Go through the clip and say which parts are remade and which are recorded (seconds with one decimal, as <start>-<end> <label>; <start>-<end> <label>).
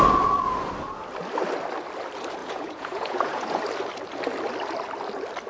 0.0-2.4 recorded; 2.4-3.6 remade; 3.6-5.5 recorded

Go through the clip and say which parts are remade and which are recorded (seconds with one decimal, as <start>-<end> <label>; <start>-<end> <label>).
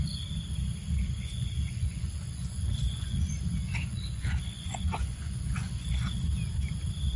0.0-1.2 recorded; 1.2-3.4 remade; 3.4-3.8 recorded; 3.8-6.2 remade; 6.2-7.2 recorded